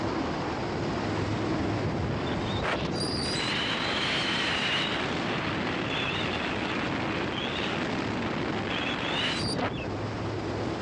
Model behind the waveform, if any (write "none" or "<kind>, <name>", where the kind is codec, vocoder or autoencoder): none